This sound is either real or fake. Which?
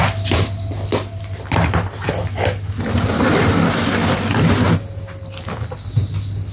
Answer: real